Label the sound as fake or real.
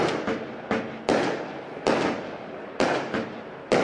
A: real